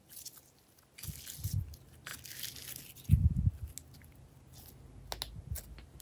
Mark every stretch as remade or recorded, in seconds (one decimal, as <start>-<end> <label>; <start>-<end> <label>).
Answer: 0.0-6.0 recorded